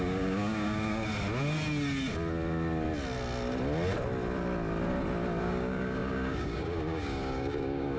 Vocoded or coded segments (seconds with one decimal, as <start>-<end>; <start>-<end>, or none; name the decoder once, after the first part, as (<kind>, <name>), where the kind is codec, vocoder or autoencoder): 0.0-1.1 (codec, DAC); 5.4-8.0